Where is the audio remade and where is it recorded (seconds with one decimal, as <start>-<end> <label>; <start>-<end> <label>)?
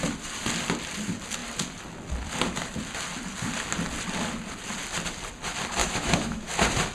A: 0.0-5.8 recorded; 5.8-6.5 remade; 6.5-6.9 recorded